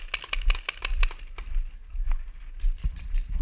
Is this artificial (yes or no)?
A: no